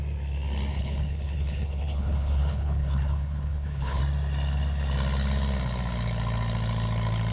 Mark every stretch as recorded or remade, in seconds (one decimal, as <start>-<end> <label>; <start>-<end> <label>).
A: 0.0-0.7 recorded; 0.7-4.0 remade; 4.0-7.3 recorded